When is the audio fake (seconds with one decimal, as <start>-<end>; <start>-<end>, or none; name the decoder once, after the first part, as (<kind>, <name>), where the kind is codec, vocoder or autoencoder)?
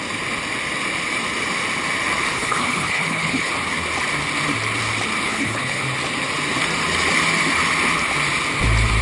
2.3-3.5 (codec, HILCodec); 5.2-5.8